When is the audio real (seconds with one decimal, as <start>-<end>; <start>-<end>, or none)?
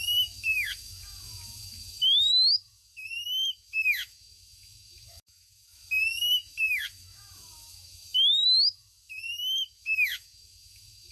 none